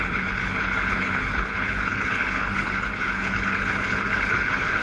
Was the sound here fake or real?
fake